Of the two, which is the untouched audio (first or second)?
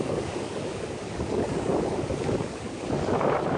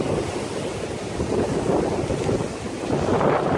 second